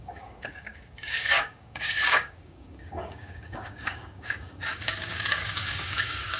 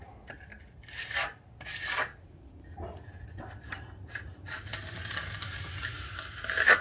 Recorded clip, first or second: second